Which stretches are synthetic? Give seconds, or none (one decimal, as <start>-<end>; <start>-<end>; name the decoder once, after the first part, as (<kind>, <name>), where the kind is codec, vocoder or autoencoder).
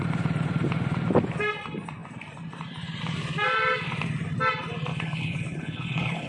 4.9-6.3 (codec, HILCodec)